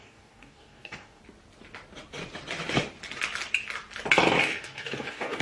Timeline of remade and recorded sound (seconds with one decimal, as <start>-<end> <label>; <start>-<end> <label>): 0.0-1.2 remade; 1.2-4.4 recorded; 4.4-5.4 remade